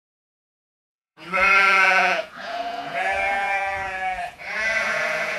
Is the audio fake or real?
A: fake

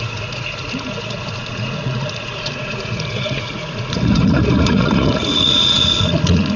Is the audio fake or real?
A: fake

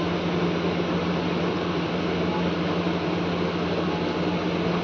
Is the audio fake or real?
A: real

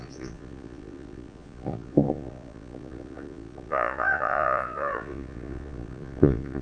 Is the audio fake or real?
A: fake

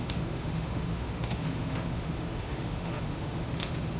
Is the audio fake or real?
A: fake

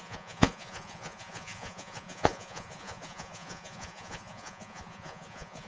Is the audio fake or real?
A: fake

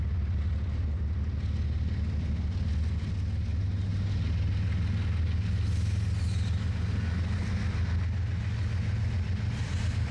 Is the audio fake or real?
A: real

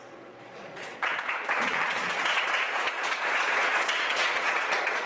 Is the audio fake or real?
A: fake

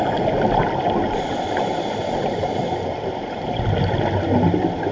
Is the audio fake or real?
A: real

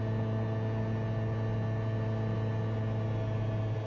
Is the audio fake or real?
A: real